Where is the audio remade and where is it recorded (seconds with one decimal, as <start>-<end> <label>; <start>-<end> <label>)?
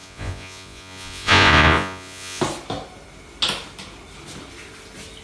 0.0-2.4 remade; 2.4-5.2 recorded